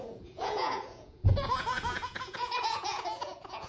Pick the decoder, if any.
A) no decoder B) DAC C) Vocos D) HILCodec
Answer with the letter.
C